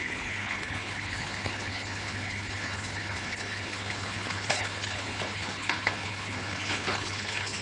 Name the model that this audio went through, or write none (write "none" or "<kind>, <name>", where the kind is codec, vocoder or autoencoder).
codec, HILCodec